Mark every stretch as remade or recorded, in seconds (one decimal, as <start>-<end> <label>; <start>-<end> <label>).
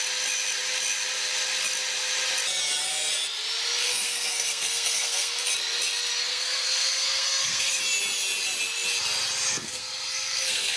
0.0-3.8 recorded; 3.8-5.5 remade; 5.5-6.3 recorded; 6.3-7.8 remade; 7.8-9.5 recorded; 9.5-10.8 remade